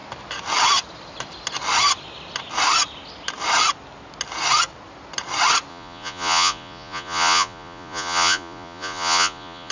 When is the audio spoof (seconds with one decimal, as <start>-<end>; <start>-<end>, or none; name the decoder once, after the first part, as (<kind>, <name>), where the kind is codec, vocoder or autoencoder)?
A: 5.7-9.7 (vocoder, Vocos)